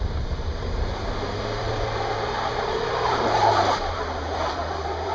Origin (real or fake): fake